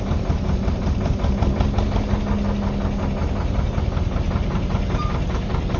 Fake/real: real